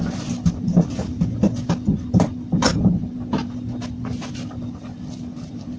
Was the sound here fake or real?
real